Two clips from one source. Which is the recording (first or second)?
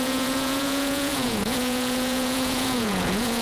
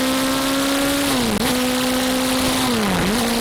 second